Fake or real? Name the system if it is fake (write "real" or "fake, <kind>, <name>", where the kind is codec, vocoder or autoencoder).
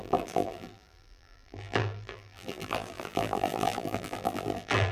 fake, vocoder, BigVGAN v2